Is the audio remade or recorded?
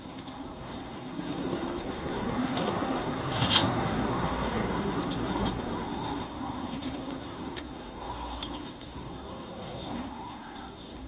remade